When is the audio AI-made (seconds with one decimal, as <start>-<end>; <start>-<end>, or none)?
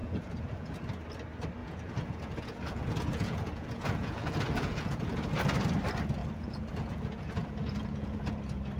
0.0-0.7; 1.6-5.3; 6.2-8.4